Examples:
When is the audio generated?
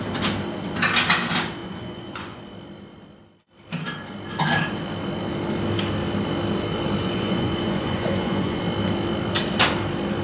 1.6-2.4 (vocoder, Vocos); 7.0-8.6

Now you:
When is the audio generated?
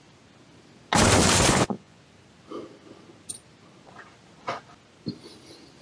1.5-2.0 (vocoder, Vocos)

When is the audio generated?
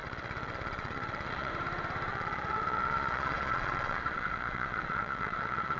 0.0-1.5 (vocoder, Vocos); 2.1-5.8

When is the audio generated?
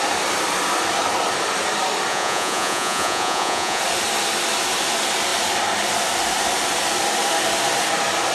2.1-3.8 (vocoder, Vocos)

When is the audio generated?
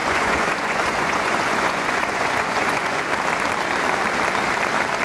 0.0-3.0 (vocoder, Vocos)